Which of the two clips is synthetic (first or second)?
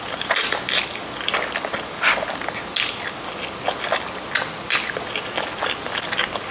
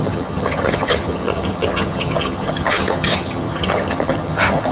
second